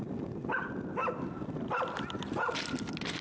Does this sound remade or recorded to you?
recorded